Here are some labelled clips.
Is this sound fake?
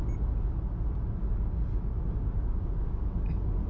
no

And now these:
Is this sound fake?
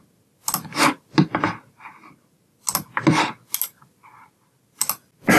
no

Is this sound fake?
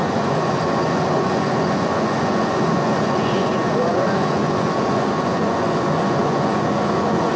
yes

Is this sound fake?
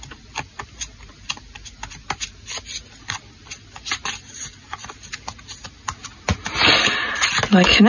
no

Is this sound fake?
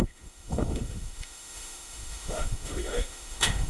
yes